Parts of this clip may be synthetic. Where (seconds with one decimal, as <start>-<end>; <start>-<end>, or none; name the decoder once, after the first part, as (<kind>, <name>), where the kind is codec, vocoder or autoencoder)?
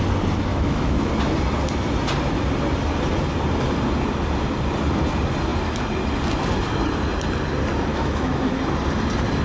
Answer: 0.5-1.1 (autoencoder, DAC-VAE); 7.9-8.6